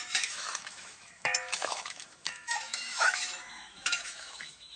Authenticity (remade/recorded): remade